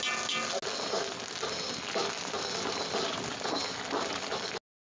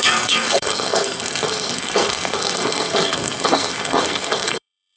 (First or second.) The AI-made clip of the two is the second